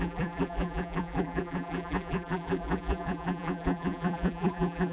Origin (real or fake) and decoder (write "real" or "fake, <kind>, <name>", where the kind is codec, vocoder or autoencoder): fake, vocoder, BigVGAN v2